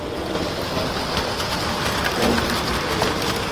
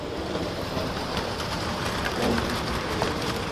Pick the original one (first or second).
first